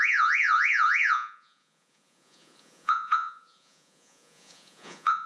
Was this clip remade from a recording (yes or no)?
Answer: yes